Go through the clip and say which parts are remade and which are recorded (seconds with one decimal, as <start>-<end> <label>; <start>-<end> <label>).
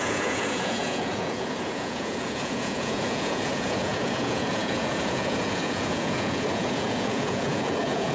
0.0-8.1 remade